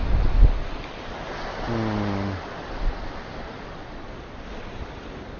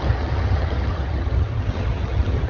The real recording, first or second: first